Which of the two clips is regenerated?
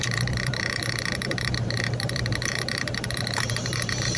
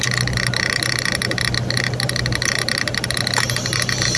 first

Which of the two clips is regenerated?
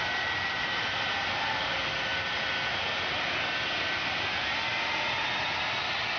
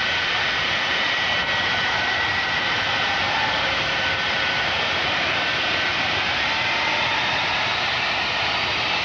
second